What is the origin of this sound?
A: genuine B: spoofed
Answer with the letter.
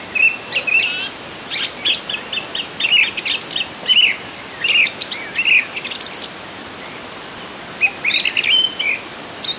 A